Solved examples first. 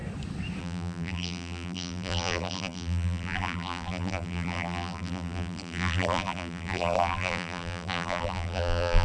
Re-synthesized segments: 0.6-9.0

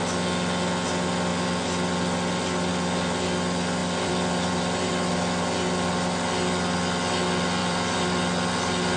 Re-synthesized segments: 3.8-4.9; 7.6-8.2